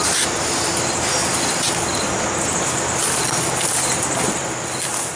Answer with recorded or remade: recorded